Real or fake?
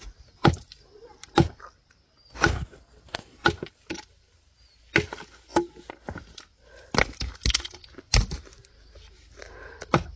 real